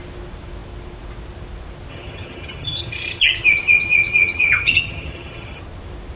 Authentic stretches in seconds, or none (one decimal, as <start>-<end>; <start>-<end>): 0.0-1.9; 5.6-6.2